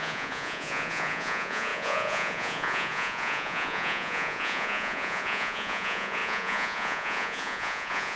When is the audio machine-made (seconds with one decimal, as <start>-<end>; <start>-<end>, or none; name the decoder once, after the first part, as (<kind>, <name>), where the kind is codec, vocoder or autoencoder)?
0.0-8.2 (vocoder, Vocos)